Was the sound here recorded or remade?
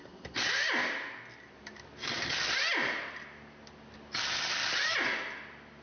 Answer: recorded